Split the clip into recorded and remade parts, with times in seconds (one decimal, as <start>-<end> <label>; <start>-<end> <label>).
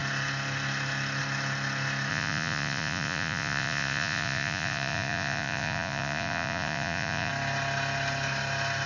0.0-2.1 recorded; 2.1-7.3 remade; 7.3-8.9 recorded